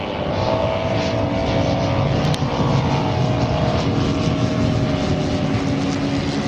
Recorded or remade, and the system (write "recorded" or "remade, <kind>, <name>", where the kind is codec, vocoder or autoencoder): recorded